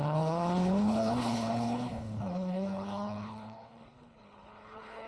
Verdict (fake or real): fake